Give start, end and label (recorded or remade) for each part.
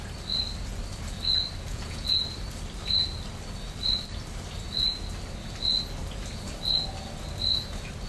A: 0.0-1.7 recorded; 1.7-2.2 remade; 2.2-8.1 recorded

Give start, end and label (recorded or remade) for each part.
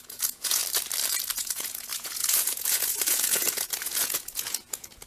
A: 0.0-0.6 remade; 0.6-1.4 recorded; 1.4-5.1 remade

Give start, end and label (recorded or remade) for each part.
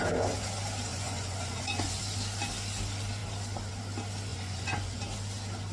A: 0.0-0.9 recorded; 0.9-2.0 remade; 2.0-4.3 recorded; 4.3-5.0 remade; 5.0-5.7 recorded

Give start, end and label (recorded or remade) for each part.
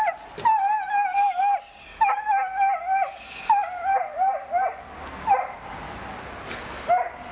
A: 0.0-7.3 recorded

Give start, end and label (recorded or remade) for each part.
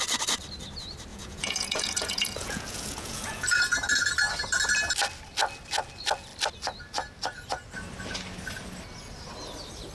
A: 0.0-1.1 recorded; 1.1-3.6 remade; 3.6-9.9 recorded